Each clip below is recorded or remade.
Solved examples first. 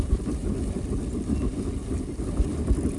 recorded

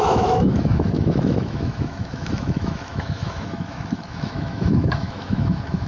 remade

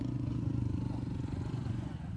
remade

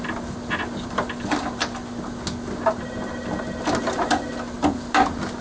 recorded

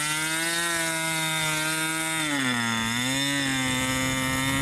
recorded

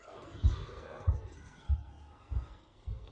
remade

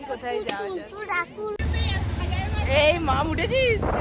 recorded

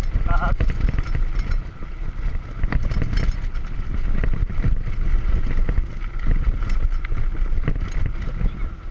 recorded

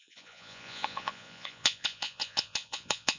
remade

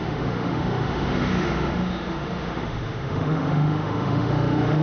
remade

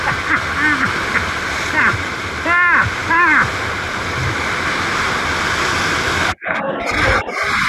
recorded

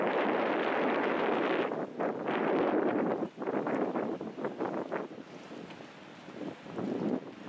recorded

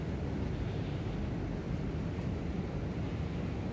recorded